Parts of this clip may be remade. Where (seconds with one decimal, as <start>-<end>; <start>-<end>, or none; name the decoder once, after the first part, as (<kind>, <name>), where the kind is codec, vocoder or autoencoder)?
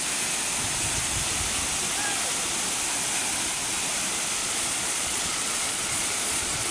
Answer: 4.4-6.7 (vocoder, Vocos)